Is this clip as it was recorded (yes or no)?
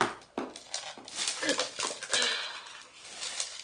yes